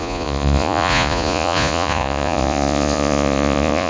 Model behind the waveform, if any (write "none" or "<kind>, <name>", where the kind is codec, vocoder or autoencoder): vocoder, Vocos